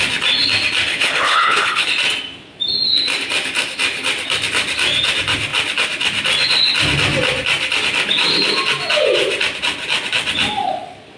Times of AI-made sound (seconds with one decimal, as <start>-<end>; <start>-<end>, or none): 0.9-1.9